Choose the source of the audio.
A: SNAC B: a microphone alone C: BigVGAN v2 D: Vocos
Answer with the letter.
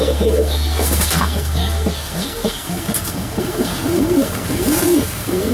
A